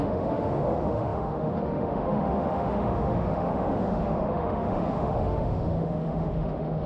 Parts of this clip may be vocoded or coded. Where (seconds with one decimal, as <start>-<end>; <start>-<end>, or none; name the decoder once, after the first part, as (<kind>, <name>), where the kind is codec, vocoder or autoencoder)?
0.0-6.9 (autoencoder, DAC-VAE)